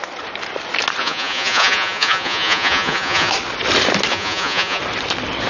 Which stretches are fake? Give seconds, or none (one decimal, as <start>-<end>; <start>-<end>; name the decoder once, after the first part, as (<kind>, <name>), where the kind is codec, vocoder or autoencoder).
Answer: 1.0-3.3 (vocoder, Vocos); 4.1-4.8